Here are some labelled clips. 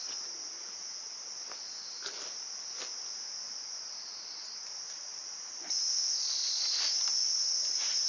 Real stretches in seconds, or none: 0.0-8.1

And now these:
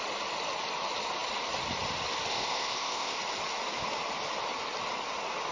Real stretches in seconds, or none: 0.0-2.3; 3.2-5.5

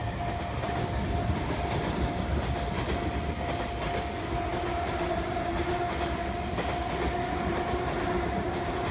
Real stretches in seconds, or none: 0.0-8.9